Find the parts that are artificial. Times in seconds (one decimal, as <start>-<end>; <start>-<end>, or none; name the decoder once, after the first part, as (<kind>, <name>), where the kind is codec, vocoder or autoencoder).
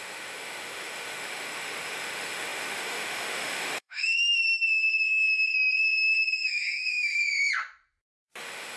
0.0-7.5 (autoencoder, DAC-VAE); 8.4-8.8